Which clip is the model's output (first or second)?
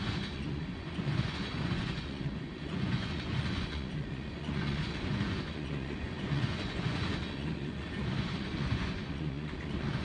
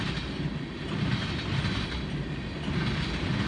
first